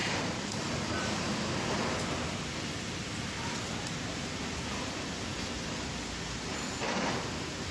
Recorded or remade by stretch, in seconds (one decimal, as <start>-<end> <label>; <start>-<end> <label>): 0.0-7.7 recorded

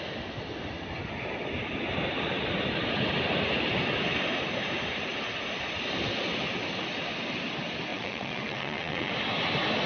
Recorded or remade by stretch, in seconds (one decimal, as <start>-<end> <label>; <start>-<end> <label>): 0.0-7.9 recorded; 7.9-9.1 remade; 9.1-9.9 recorded

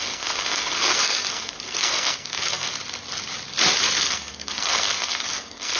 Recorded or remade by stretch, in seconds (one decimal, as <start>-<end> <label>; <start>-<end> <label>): 0.0-2.7 remade; 2.7-4.0 recorded; 4.0-5.8 remade

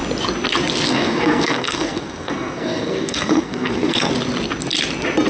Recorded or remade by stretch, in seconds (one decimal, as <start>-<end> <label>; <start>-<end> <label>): 0.0-0.9 recorded; 0.9-4.1 remade; 4.1-5.3 recorded

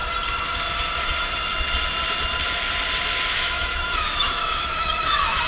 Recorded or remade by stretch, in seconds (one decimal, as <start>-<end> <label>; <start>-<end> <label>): 0.0-3.3 recorded; 3.3-5.5 remade